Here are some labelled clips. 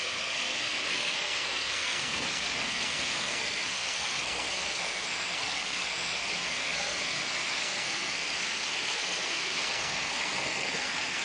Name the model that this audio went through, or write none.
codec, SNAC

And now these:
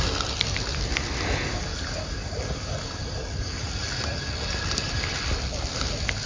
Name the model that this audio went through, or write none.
none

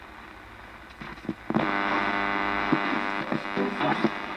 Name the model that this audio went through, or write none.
none